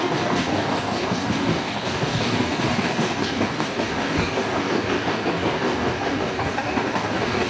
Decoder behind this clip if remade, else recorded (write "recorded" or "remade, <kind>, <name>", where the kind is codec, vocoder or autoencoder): remade, codec, DAC